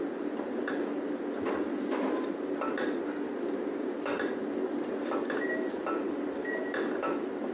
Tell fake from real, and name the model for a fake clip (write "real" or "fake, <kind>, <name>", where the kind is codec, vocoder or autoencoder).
real